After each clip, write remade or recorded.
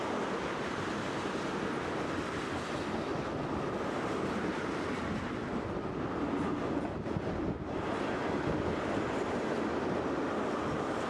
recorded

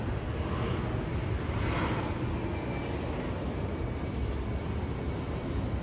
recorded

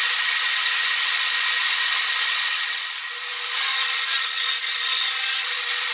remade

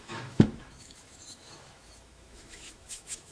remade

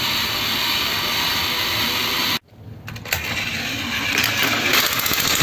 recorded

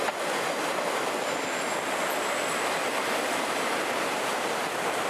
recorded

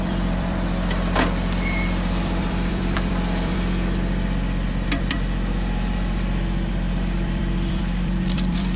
remade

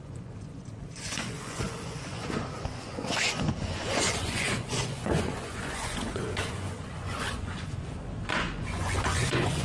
remade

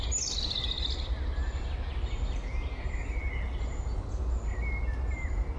recorded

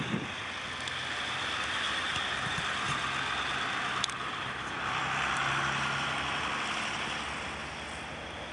recorded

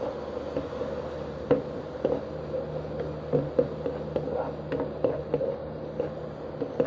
recorded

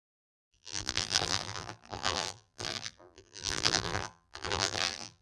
remade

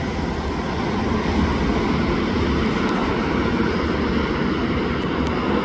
recorded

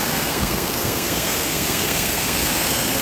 remade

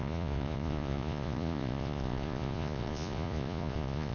remade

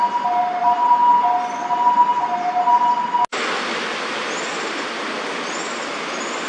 recorded